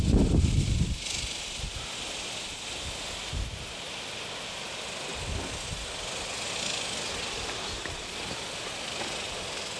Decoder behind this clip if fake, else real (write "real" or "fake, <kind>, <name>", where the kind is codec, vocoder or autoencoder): real